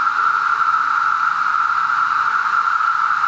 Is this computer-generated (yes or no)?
no